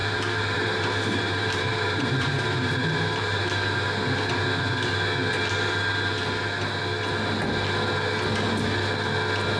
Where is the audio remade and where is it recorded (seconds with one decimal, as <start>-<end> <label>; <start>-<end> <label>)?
0.0-3.4 remade; 3.4-9.6 recorded